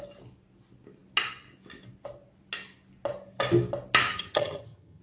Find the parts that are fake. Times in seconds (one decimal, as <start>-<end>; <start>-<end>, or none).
4.1-5.0